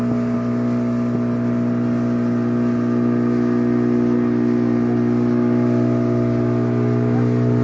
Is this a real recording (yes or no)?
yes